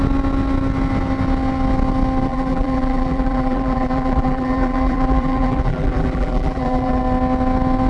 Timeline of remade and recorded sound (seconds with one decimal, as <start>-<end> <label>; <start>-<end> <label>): 0.0-2.3 recorded; 2.3-7.0 remade; 7.0-7.9 recorded